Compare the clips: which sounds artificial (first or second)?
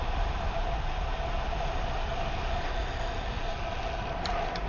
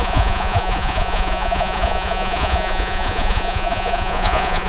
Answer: second